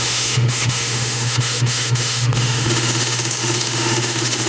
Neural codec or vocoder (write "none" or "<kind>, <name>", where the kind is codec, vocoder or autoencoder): autoencoder, DAC-VAE